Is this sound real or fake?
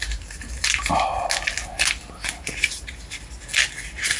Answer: real